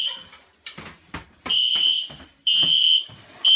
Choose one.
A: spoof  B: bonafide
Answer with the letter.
B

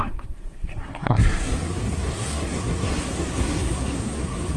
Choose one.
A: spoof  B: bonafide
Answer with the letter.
A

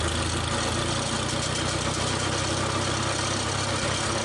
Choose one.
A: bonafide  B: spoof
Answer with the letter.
A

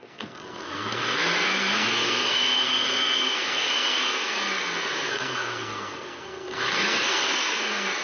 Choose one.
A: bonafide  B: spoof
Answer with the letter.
B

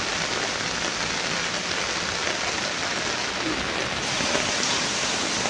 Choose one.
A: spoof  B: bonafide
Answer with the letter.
B